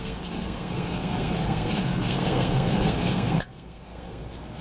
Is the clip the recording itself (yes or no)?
no